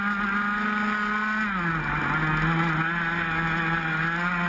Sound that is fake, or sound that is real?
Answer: real